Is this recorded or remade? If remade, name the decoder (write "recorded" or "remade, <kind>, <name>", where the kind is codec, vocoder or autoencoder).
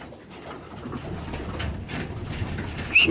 recorded